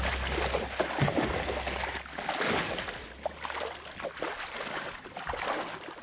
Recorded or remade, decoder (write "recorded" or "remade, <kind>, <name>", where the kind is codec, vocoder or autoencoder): recorded